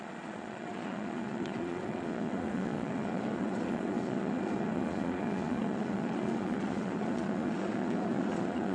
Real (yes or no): no